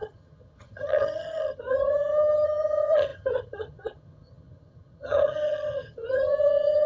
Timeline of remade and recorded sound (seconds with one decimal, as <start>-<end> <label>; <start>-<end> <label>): 0.0-6.9 remade